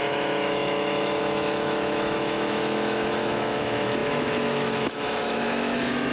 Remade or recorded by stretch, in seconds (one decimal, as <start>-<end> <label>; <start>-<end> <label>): 0.0-6.1 remade